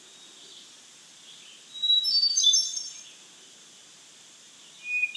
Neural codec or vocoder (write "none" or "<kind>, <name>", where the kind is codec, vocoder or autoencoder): none